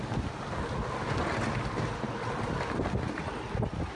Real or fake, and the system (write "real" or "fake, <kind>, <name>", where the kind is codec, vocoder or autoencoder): real